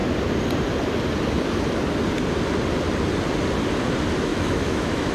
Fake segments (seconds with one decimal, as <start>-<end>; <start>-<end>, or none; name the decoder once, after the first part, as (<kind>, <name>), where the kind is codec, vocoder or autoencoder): 4.3-5.1 (autoencoder, DAC-VAE)